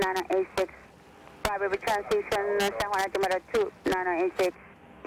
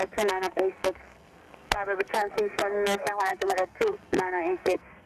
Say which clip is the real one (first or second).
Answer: first